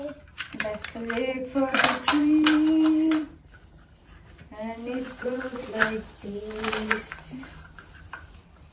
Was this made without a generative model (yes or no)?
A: no